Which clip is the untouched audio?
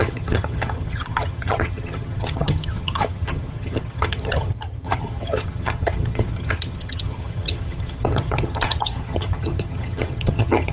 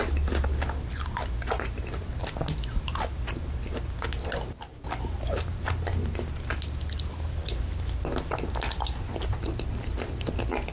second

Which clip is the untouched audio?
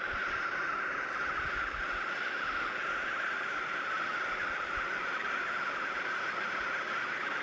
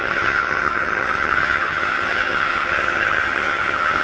first